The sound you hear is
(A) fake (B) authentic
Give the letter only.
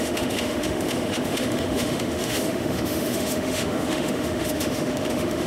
A